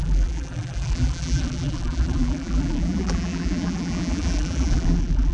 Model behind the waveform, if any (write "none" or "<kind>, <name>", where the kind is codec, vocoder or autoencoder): vocoder, BigVGAN v2